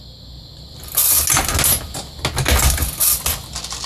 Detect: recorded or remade recorded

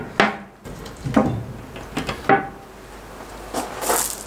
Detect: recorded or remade recorded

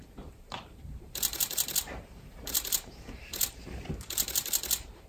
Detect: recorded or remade remade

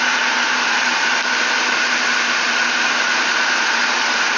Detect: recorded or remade remade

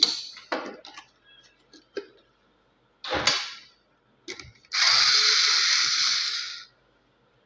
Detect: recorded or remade recorded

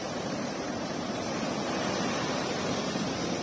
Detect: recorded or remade remade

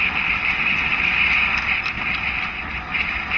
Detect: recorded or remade recorded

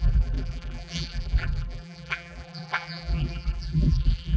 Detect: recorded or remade remade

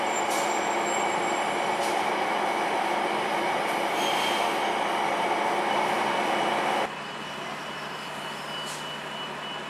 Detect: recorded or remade recorded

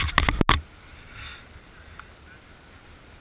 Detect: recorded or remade recorded